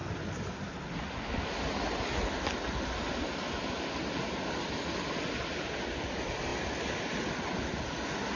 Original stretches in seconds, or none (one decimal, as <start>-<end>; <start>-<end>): 0.0-8.4